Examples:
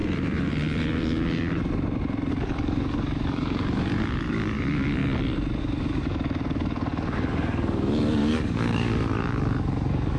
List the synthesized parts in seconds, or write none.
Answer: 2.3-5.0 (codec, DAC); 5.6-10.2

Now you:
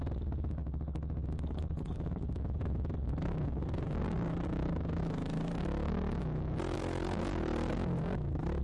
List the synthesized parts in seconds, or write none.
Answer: 0.0-8.6 (codec, DAC)

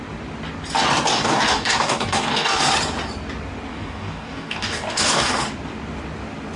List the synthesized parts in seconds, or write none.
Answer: 1.1-2.6 (codec, DAC); 3.7-5.3